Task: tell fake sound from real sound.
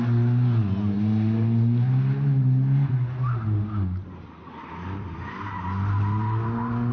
real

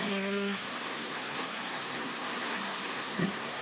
fake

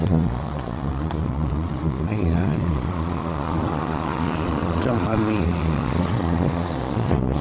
fake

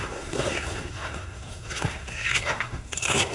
fake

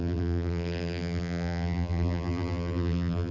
fake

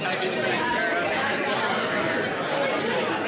real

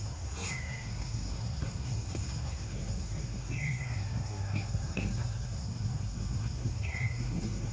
fake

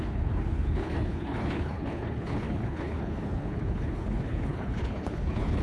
fake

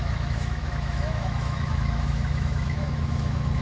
fake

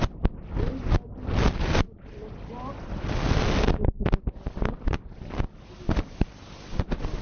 real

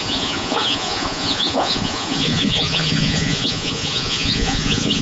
fake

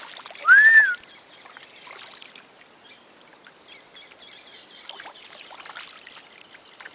real